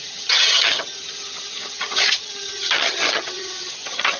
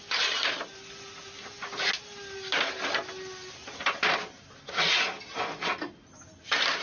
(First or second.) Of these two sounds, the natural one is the second